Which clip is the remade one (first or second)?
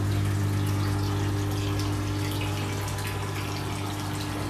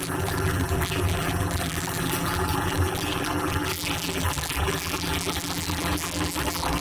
second